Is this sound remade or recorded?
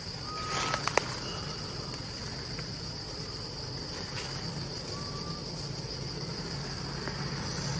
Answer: recorded